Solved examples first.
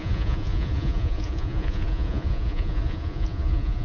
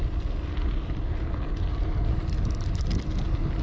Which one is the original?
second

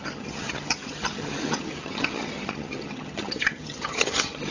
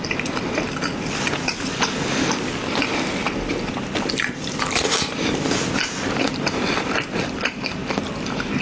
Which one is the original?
second